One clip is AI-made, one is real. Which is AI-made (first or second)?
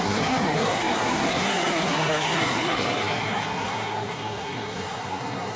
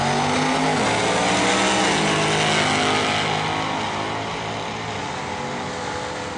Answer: first